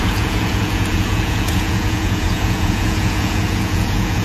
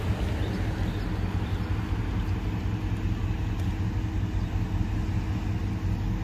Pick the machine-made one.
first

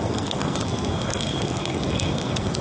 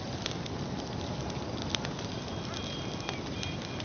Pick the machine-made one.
first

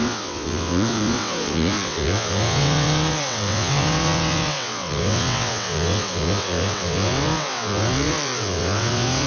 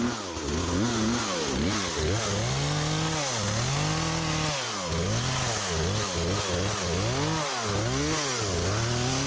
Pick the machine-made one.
first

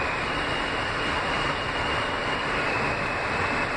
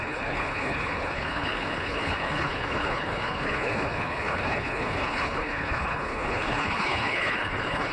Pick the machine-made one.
second